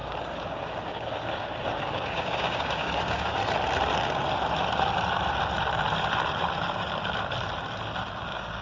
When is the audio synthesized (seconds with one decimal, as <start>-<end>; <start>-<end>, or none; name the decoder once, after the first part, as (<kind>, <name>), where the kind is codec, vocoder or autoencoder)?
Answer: 0.0-3.4 (codec, DAC); 8.2-8.6